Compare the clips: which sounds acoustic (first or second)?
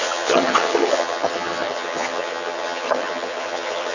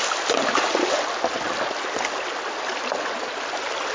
second